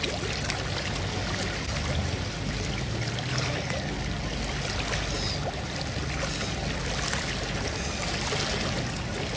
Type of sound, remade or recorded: recorded